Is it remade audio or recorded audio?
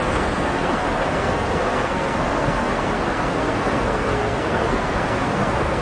remade